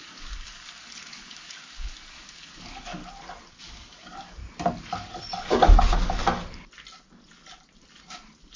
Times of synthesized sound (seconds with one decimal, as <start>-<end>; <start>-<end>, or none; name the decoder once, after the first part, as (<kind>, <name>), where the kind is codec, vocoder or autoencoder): 0.0-3.0 (codec, DAC); 3.6-4.4; 5.3-6.2